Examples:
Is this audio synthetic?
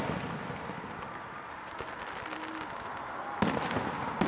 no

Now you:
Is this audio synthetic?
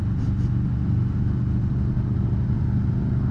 yes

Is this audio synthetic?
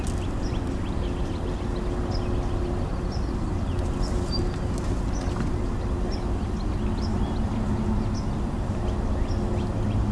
no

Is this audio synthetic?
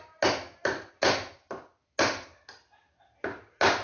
no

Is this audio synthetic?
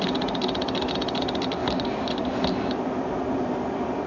no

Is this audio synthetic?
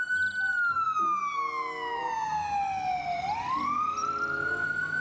no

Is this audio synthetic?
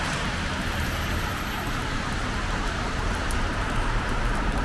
yes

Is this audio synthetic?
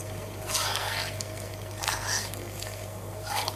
yes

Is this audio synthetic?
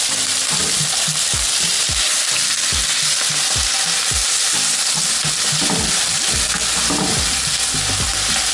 yes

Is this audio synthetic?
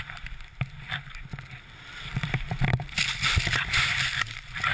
yes